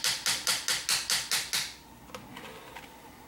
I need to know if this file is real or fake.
real